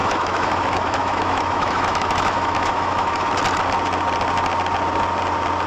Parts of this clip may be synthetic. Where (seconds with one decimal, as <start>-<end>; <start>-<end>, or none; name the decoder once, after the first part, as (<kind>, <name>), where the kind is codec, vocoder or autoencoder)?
0.0-3.3 (autoencoder, DAC-VAE)